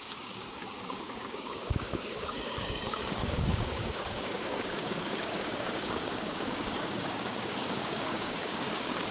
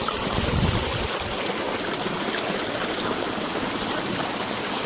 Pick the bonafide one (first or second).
second